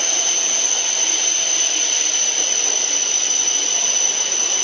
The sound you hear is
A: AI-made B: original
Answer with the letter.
B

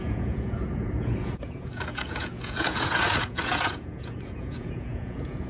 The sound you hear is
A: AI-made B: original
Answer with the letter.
A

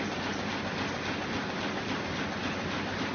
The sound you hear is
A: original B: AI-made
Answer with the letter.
A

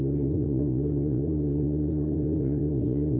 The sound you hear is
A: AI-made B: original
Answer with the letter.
A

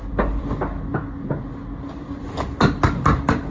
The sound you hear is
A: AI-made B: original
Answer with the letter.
B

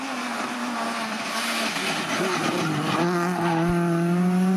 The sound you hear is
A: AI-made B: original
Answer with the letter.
B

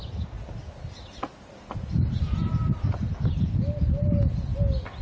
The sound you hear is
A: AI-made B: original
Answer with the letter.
B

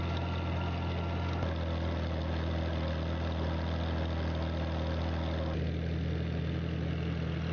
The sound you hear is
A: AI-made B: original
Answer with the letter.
B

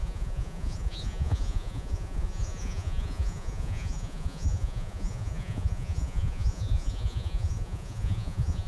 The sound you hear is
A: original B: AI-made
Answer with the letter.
B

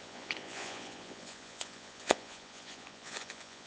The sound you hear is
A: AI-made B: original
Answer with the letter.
A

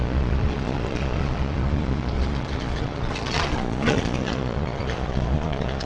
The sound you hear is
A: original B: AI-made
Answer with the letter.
B